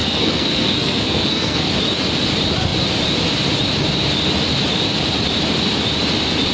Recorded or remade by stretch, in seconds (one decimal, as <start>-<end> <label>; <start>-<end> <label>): 0.0-1.7 remade; 1.7-6.5 recorded